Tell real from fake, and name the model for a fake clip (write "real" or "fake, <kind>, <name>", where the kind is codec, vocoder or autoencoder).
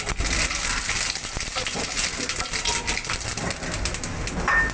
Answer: real